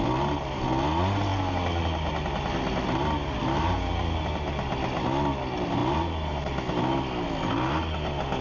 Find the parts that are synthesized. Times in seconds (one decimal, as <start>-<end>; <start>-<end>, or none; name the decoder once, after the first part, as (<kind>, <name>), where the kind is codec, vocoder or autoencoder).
none